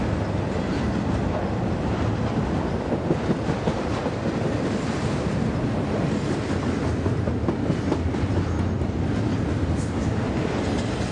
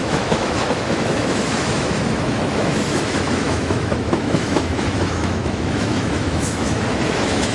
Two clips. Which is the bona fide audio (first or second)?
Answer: first